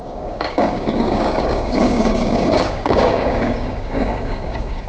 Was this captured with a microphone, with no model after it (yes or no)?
no